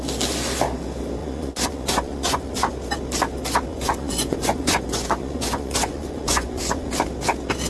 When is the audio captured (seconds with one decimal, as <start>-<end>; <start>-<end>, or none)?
0.0-1.2; 2.7-3.7; 6.9-7.7